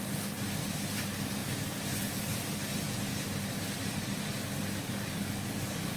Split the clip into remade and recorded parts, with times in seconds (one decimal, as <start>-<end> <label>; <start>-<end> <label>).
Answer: 0.0-4.8 recorded; 4.8-6.0 remade